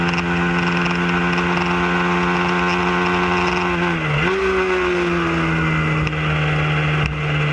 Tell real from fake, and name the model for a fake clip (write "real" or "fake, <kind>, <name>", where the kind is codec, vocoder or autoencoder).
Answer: real